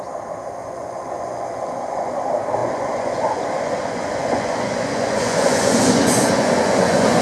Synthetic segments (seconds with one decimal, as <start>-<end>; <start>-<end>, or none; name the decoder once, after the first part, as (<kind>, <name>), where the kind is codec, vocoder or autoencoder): 0.6-2.2 (vocoder, Vocos); 2.6-7.2